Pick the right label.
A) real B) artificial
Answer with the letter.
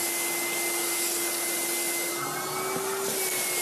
A